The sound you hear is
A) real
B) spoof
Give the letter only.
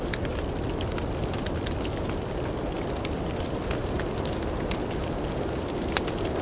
A